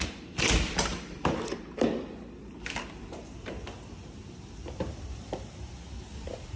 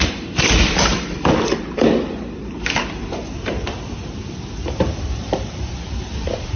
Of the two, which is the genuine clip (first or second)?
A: first